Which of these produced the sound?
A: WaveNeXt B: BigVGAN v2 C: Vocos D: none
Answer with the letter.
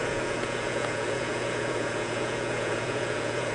C